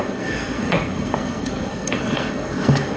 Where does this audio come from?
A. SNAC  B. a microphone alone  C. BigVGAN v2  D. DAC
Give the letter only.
A